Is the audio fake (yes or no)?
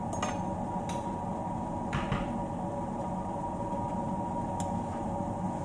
no